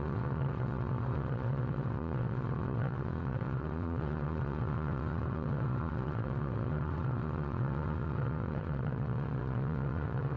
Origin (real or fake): fake